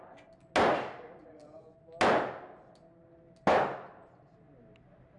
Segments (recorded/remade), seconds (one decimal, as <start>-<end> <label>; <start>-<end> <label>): 0.0-5.2 recorded